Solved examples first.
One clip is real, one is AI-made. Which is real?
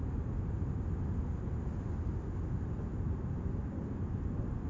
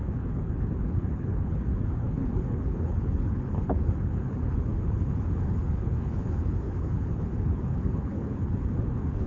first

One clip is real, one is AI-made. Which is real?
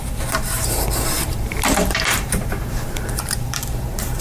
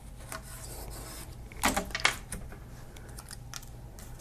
second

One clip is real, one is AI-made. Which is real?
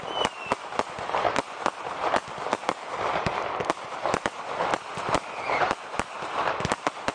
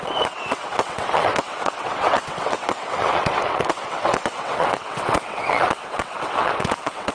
first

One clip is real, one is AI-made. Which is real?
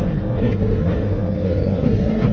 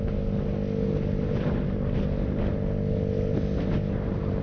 second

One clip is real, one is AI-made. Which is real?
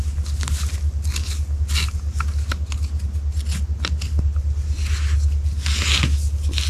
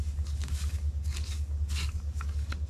first